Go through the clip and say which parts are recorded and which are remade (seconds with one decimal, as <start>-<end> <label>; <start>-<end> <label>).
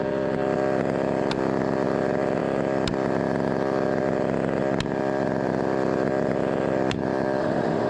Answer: 0.0-7.4 recorded; 7.4-7.9 remade